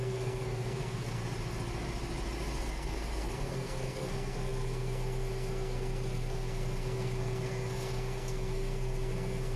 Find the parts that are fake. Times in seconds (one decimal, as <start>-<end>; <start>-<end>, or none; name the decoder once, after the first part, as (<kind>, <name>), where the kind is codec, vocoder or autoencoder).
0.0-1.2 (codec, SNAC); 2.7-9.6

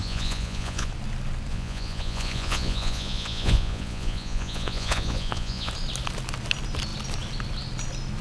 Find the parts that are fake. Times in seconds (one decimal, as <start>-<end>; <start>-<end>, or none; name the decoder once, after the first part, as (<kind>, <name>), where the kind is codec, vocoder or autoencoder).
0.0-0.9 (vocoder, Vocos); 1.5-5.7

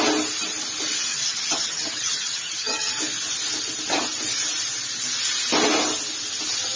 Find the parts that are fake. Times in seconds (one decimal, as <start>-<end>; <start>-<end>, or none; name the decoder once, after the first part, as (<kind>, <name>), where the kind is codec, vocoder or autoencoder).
1.1-2.9 (vocoder, HiFi-GAN)